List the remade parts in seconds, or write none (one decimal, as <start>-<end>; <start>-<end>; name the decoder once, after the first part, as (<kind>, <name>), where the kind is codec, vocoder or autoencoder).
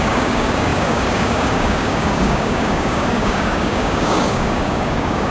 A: 0.0-5.3 (codec, DAC)